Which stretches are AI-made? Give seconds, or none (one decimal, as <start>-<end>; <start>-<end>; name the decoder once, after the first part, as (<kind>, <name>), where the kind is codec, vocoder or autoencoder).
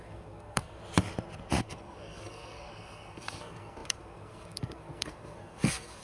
0.0-0.8 (codec, SNAC); 1.6-6.0